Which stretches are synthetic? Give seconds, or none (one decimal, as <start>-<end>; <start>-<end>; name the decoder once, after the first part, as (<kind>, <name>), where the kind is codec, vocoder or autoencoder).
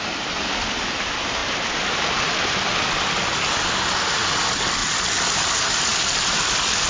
none